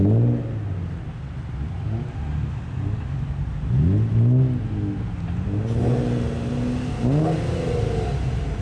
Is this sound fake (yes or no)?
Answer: no